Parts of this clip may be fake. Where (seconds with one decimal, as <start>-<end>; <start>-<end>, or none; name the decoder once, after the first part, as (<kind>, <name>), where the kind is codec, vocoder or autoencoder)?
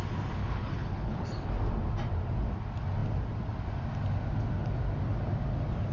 0.4-1.5 (codec, HILCodec)